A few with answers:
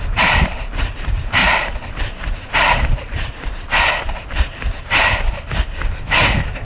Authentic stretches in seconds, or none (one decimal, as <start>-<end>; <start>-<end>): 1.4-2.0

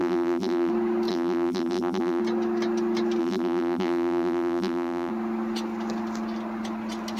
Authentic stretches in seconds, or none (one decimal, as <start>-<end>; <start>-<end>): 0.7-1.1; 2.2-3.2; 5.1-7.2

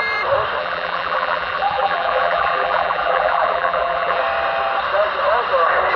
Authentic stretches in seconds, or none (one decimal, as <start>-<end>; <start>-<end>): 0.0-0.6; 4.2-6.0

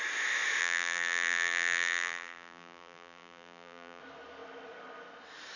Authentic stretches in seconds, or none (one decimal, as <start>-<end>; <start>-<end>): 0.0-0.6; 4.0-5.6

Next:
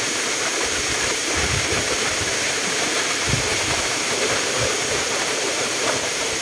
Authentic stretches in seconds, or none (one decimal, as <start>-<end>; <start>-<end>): 1.2-2.2